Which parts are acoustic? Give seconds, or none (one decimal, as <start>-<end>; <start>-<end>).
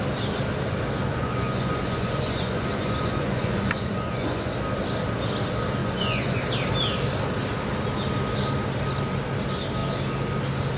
0.0-1.1; 4.5-5.8; 6.4-10.8